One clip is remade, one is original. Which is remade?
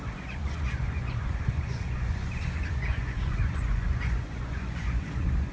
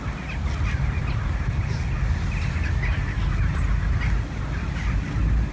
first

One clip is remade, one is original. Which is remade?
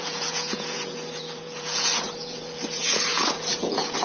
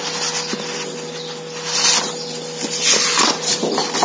first